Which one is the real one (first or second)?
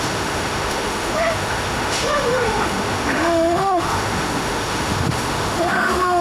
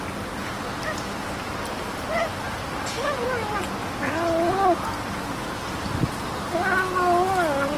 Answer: second